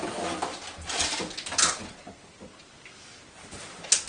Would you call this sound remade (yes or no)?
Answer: no